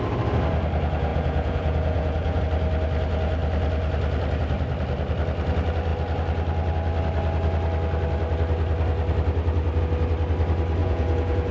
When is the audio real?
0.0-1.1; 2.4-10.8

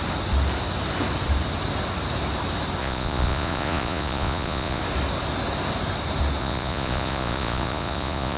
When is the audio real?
0.0-2.8; 4.8-6.4

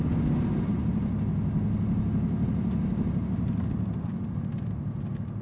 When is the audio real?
0.0-5.4

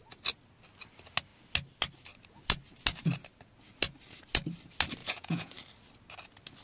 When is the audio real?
0.0-5.0; 5.5-6.6